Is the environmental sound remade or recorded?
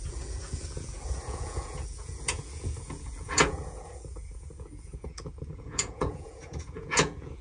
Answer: remade